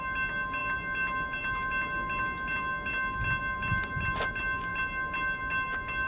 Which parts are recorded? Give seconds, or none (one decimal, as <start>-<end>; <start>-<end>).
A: 0.0-6.1